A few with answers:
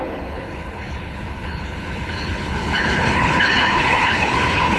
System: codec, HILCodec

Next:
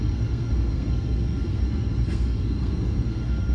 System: codec, SNAC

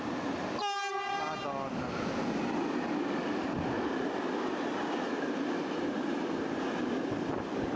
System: none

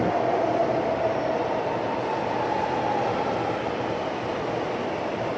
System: none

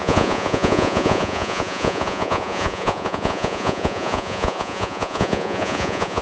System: vocoder, Vocos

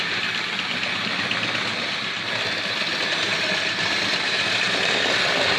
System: none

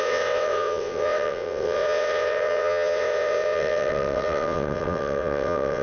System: vocoder, WaveNeXt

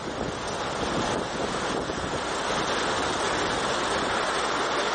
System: none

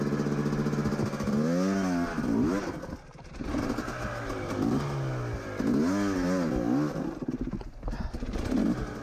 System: none